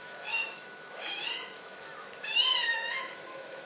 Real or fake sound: fake